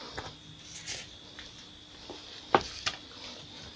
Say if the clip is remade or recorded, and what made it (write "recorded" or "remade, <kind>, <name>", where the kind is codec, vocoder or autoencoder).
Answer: recorded